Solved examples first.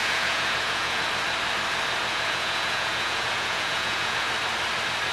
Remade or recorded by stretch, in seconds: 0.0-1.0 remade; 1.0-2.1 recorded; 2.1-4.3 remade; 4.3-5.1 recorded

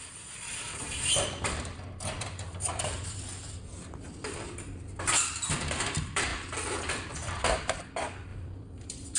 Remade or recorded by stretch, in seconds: 0.0-6.3 remade; 6.3-7.1 recorded; 7.1-9.2 remade

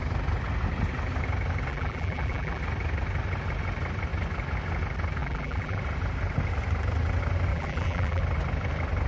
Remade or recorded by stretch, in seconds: 0.0-1.7 recorded; 1.7-2.6 remade; 2.6-5.2 recorded; 5.2-5.8 remade; 5.8-7.5 recorded; 7.5-8.2 remade; 8.2-9.1 recorded

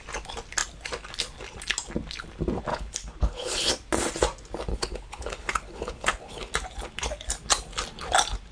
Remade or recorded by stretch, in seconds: 0.0-2.7 recorded; 2.7-3.7 remade; 3.7-4.7 recorded; 4.7-6.5 remade; 6.5-8.5 recorded